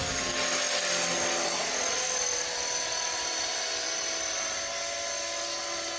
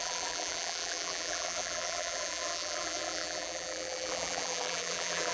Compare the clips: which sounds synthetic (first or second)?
second